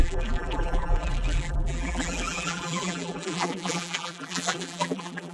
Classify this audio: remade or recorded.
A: remade